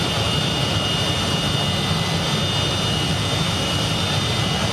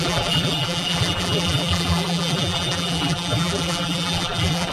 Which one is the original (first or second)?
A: first